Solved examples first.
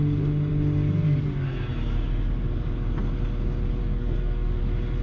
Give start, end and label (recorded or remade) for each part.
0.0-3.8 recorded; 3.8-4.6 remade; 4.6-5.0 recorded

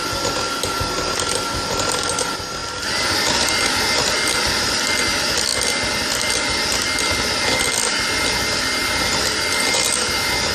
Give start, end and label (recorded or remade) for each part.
0.0-10.5 recorded